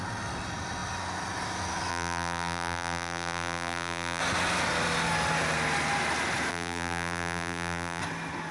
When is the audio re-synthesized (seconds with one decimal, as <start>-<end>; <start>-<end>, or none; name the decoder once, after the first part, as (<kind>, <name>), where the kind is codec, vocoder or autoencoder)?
1.9-4.2 (vocoder, BigVGAN v2); 6.5-8.0